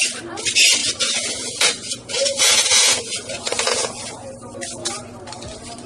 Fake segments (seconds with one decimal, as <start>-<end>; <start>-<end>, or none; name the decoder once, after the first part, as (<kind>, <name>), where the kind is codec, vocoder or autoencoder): 0.8-4.3 (vocoder, Vocos)